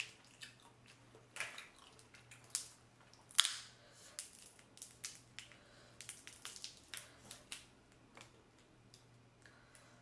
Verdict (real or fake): real